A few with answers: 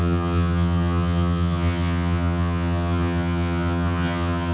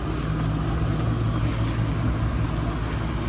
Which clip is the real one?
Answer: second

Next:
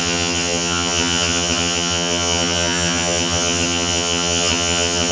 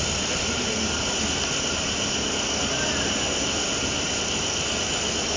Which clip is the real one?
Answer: second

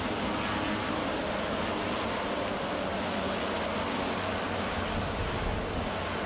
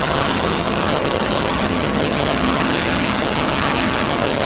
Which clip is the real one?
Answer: first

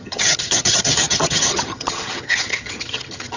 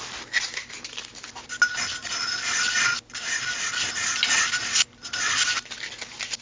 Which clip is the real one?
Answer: second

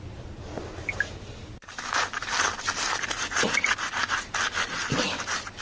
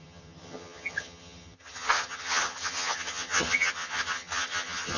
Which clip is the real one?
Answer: first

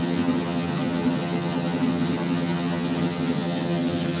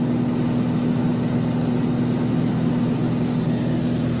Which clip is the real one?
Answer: second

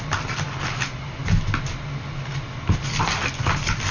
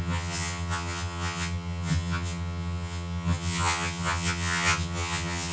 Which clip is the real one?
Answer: first